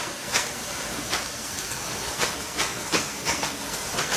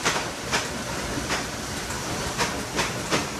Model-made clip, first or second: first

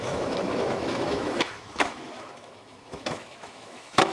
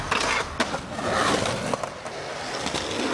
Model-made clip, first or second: first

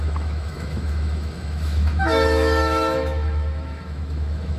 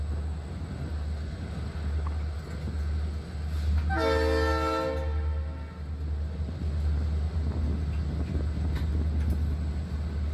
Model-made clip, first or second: first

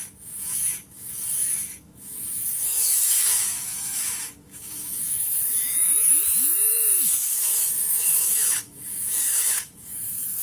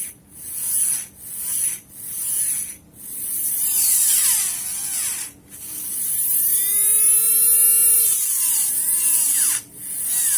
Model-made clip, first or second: first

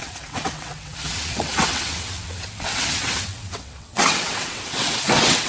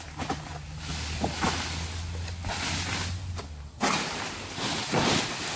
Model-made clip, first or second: first